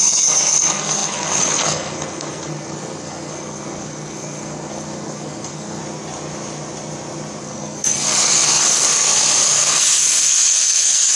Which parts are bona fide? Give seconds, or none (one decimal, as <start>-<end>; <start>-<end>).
5.8-7.4